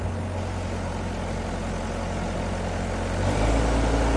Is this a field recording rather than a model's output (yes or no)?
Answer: yes